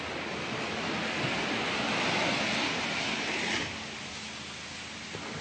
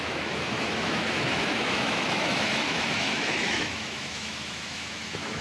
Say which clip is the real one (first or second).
first